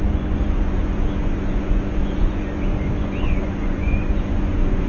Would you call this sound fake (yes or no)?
yes